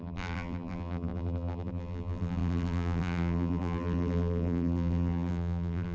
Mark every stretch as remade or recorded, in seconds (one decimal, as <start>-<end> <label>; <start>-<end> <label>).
0.0-5.9 remade